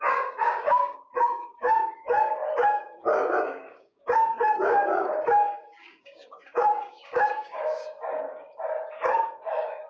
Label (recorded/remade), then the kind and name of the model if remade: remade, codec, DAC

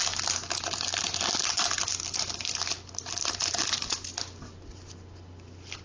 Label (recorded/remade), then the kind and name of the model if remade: recorded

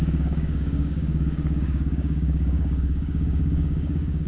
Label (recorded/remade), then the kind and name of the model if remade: remade, codec, DAC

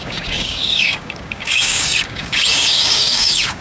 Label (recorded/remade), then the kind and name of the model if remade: remade, codec, DAC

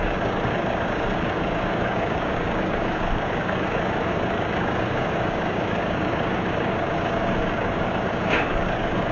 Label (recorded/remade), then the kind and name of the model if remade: remade, codec, DAC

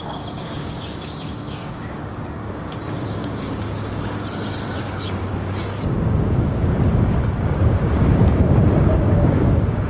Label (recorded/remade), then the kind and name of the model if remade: remade, codec, DAC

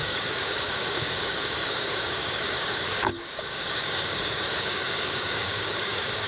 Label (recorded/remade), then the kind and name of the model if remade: remade, codec, DAC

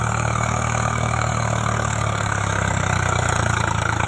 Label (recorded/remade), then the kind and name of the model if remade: remade, codec, DAC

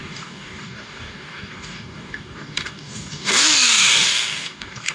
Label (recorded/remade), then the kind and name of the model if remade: remade, codec, DAC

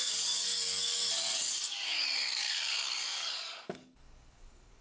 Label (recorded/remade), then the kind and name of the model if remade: remade, codec, DAC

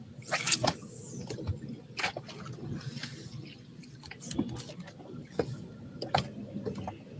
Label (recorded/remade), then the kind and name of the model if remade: recorded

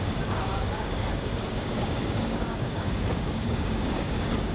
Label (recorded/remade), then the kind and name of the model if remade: remade, codec, DAC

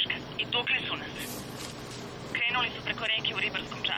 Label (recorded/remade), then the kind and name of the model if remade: recorded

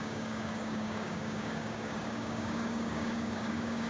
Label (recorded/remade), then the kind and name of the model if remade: remade, codec, DAC